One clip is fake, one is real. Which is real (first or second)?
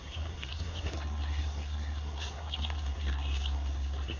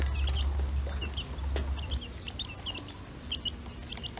second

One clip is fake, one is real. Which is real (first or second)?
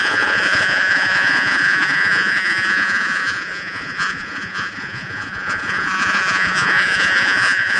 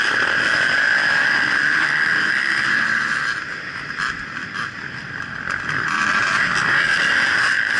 second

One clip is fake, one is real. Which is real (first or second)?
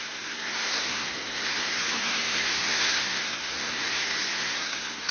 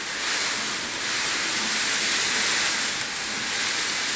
second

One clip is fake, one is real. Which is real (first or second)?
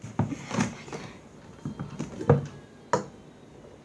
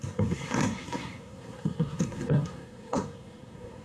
first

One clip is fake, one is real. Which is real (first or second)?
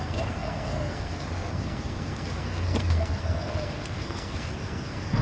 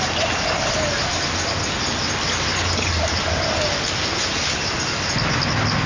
second